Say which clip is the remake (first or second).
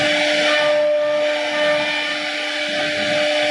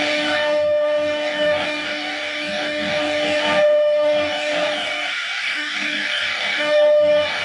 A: second